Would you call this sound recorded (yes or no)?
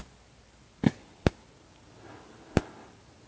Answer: yes